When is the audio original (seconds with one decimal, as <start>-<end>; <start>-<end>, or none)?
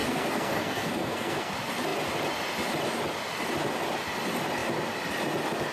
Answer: 1.5-5.7